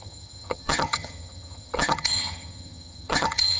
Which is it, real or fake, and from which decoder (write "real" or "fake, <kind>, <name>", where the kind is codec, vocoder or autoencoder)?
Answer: fake, vocoder, HiFi-GAN